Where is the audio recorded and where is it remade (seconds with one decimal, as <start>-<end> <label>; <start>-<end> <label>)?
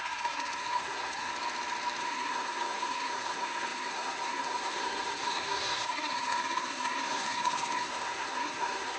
0.0-1.3 remade; 1.3-2.0 recorded; 2.0-9.0 remade